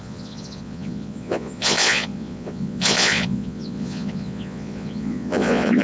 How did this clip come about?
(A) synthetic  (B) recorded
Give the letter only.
A